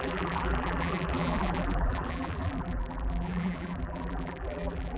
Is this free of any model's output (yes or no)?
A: no